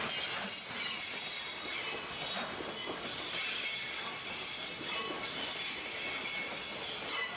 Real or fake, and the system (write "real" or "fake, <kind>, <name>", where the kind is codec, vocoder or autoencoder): real